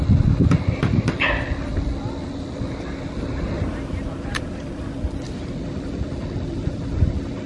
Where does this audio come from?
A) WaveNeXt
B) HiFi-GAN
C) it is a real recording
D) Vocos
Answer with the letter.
C